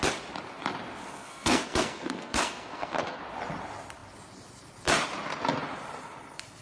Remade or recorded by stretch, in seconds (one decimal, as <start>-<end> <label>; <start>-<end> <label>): 0.0-1.0 recorded; 1.0-3.2 remade; 3.2-6.6 recorded